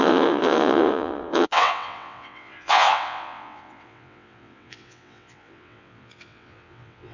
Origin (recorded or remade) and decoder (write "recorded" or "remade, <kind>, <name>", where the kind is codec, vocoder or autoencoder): remade, vocoder, WaveNeXt